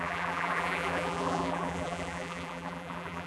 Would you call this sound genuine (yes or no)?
no